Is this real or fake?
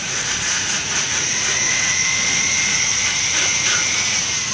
fake